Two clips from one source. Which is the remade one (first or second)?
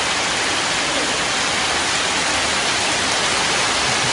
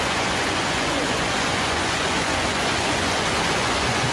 second